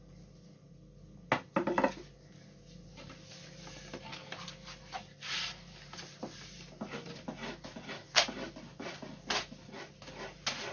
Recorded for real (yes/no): yes